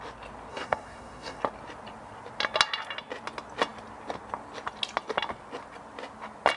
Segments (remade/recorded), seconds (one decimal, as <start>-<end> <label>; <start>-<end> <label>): 0.0-0.5 recorded; 0.5-1.4 remade; 1.4-6.6 recorded